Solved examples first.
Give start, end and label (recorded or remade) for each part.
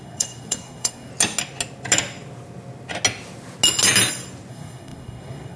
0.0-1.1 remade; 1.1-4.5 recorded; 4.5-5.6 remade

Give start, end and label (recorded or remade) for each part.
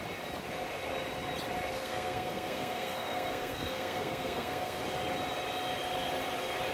0.0-1.8 recorded; 1.8-4.8 remade; 4.8-6.7 recorded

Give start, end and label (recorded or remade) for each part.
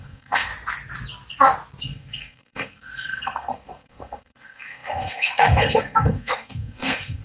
0.0-0.5 remade; 0.5-1.8 recorded; 1.8-7.2 remade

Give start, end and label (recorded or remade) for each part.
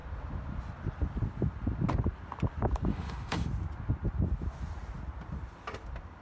0.0-2.9 recorded; 2.9-3.5 remade; 3.5-6.2 recorded